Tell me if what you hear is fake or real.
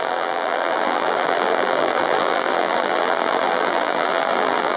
fake